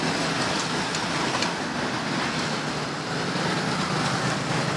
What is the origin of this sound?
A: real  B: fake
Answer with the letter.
A